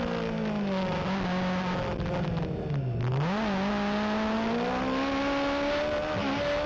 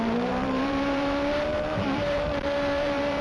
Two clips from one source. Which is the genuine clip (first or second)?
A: first